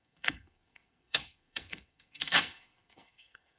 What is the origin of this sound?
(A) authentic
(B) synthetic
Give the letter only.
B